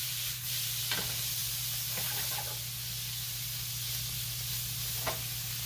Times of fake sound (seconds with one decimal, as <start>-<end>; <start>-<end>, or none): 0.0-0.8